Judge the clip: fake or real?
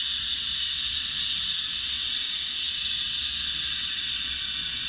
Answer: fake